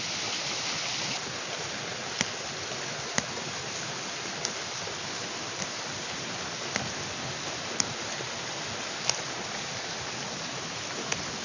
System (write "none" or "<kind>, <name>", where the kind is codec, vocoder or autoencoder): none